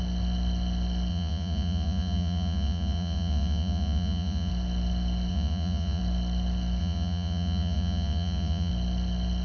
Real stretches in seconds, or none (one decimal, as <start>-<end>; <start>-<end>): 0.0-1.1; 4.5-5.3; 6.0-6.8; 8.7-9.4